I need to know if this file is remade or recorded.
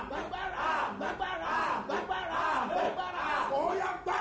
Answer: recorded